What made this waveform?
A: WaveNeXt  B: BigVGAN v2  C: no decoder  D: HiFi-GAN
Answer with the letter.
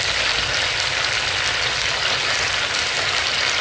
C